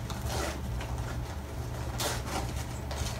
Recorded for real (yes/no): yes